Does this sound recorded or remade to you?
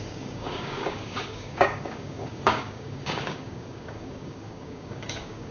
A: remade